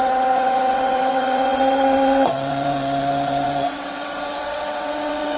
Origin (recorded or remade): remade